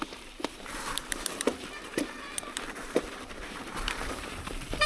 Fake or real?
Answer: fake